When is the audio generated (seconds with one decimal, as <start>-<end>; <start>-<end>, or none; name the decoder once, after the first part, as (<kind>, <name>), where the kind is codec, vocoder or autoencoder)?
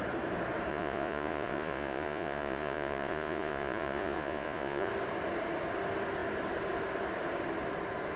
0.7-4.9 (vocoder, Vocos)